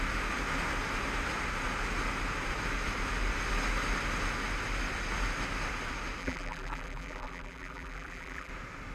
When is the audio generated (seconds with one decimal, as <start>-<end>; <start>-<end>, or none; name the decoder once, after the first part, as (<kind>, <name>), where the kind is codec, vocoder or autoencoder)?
6.2-8.5 (vocoder, BigVGAN v2)